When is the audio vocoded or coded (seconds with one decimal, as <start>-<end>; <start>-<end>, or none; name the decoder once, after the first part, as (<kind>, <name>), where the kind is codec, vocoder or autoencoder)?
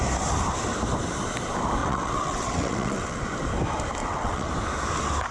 1.8-3.2 (vocoder, WaveNeXt); 4.0-4.5